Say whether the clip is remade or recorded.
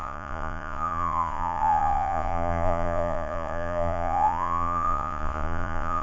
remade